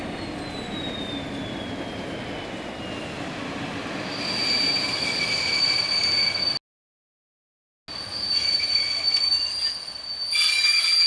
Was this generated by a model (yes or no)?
no